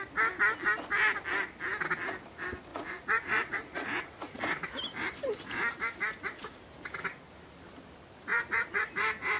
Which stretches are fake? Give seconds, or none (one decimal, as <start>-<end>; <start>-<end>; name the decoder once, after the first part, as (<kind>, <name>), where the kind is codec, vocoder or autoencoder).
2.7-4.4 (vocoder, Vocos); 8.3-8.9